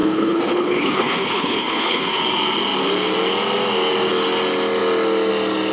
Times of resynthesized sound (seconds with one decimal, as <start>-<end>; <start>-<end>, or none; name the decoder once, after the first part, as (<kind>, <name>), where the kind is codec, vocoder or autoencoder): 0.0-2.2 (codec, HILCodec)